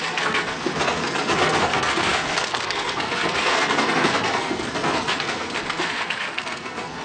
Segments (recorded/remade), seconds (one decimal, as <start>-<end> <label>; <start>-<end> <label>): 0.0-7.0 remade